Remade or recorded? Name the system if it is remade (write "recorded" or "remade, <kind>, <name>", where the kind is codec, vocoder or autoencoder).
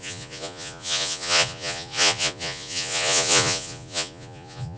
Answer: remade, vocoder, Vocos